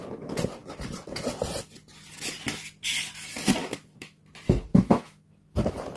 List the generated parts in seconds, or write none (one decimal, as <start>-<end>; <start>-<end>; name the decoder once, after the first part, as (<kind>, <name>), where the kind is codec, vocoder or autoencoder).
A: 3.6-4.2 (autoencoder, DAC-VAE); 4.7-5.3